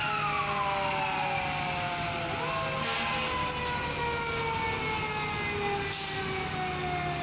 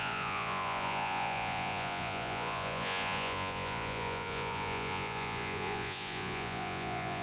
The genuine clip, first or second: first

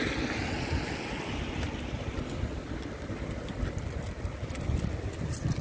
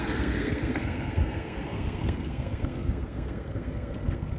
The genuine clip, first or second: first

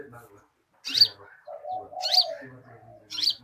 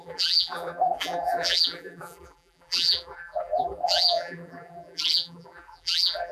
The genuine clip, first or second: first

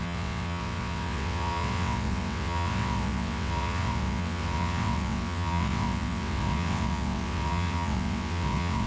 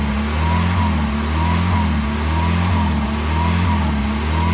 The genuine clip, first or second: second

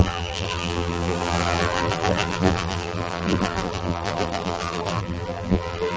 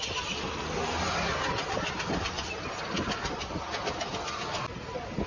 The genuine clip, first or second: second